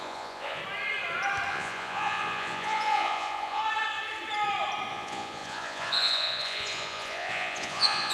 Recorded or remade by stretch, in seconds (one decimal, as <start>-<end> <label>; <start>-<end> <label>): 0.0-0.6 remade; 0.6-1.5 recorded; 1.5-3.6 remade; 3.6-4.9 recorded; 4.9-8.1 remade